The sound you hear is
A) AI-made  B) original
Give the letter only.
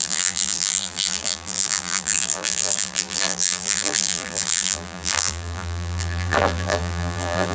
A